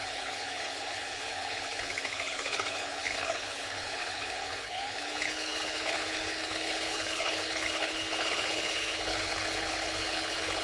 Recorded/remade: remade